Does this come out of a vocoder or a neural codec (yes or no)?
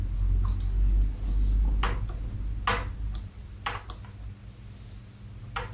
no